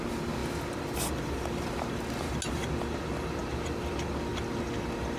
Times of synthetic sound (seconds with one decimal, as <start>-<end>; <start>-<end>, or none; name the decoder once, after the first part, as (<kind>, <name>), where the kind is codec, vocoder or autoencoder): none